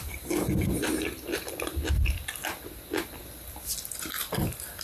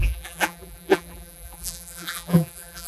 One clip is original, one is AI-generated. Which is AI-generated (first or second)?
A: second